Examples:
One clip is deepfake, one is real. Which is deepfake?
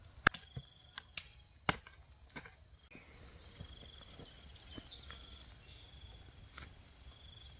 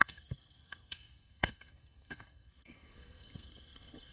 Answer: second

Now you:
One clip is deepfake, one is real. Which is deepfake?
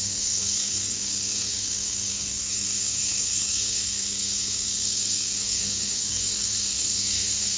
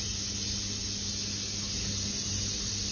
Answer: first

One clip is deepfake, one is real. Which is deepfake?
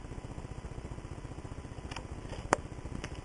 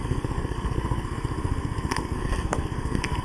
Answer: second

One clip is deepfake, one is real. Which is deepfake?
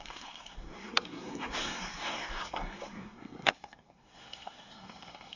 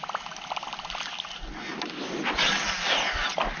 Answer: first